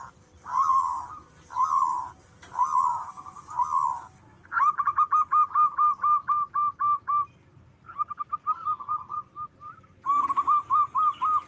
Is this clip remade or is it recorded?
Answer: recorded